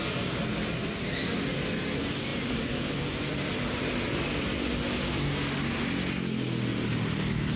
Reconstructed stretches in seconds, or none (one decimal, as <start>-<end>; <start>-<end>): 2.3-4.2; 6.7-7.6